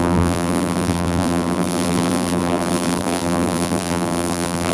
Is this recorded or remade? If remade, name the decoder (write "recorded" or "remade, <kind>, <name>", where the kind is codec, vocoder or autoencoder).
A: remade, vocoder, BigVGAN v2